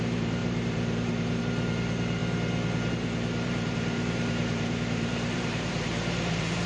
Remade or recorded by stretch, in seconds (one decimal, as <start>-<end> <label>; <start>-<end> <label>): 0.0-2.2 remade; 2.2-2.9 recorded; 2.9-6.7 remade